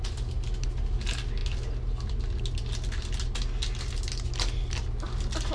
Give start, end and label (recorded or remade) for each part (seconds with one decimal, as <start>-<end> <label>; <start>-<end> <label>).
0.0-5.5 recorded